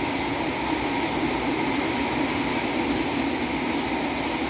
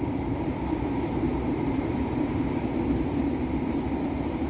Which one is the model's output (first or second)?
second